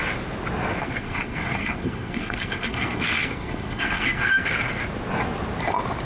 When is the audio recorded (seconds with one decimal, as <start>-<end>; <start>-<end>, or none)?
0.0-0.8; 4.5-6.1